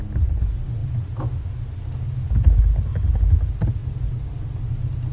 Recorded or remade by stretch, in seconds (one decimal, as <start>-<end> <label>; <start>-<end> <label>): 0.0-5.1 recorded